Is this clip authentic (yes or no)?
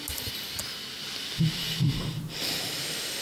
yes